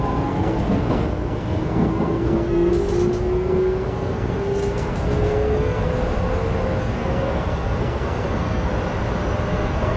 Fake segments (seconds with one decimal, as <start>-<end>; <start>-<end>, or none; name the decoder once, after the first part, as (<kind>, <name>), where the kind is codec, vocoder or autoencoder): 0.0-2.7 (codec, SNAC); 3.2-5.9; 6.8-8.7; 9.5-10.0